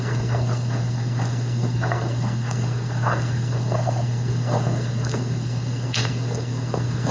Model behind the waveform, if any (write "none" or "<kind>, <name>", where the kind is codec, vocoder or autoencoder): codec, SNAC